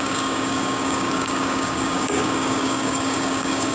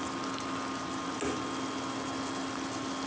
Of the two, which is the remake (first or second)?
first